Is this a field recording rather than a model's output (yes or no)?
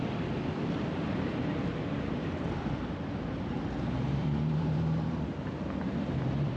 no